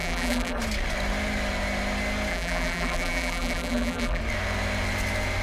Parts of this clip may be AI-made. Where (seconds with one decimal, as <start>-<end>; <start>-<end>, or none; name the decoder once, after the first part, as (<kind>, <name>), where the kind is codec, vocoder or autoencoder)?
0.0-0.6 (vocoder, BigVGAN v2); 2.3-4.2